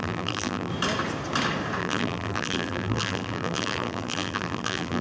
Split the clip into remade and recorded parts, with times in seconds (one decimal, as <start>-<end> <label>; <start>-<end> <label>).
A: 0.0-0.7 remade; 0.7-1.8 recorded; 1.8-5.0 remade